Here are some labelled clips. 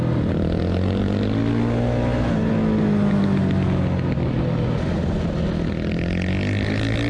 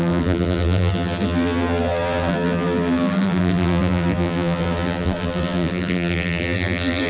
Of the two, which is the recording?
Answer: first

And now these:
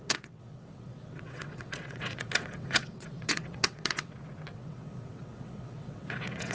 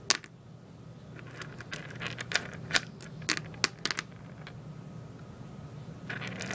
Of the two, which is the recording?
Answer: second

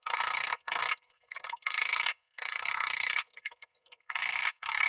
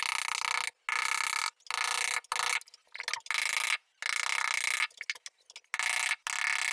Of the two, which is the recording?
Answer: second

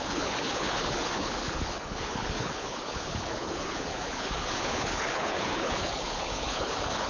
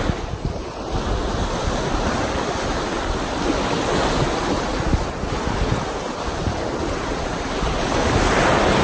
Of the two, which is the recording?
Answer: second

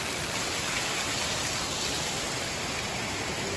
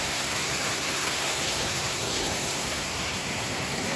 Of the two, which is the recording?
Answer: first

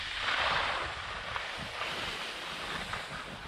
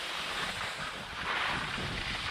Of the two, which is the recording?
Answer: first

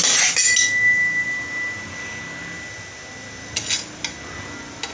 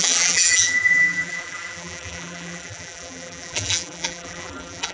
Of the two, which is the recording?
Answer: first